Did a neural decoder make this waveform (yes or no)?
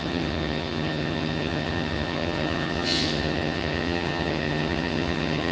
yes